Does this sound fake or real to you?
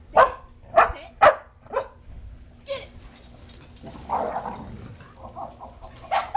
real